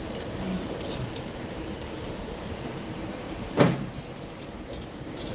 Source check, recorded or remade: remade